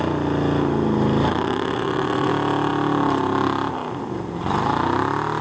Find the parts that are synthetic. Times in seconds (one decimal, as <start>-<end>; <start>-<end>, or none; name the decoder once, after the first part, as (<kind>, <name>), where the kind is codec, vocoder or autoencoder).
1.3-2.3 (vocoder, WaveNeXt)